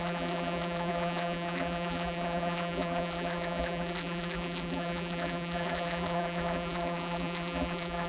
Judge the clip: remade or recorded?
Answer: remade